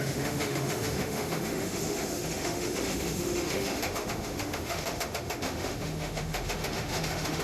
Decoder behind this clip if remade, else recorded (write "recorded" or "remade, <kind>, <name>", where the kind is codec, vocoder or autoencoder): remade, autoencoder, DAC-VAE